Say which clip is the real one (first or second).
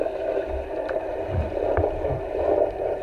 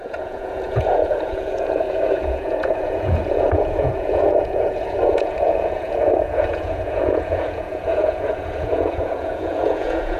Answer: first